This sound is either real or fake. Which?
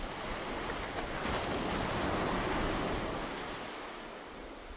real